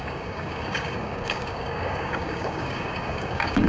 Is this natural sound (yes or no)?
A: no